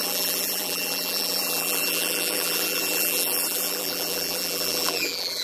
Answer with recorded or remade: remade